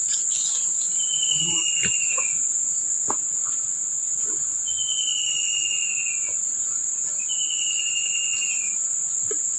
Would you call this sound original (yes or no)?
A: yes